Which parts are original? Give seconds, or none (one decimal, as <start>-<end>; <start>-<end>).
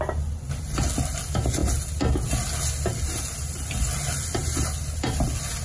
0.0-5.6